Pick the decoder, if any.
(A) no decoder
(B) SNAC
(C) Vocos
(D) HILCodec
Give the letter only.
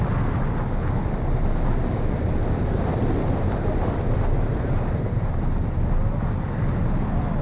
A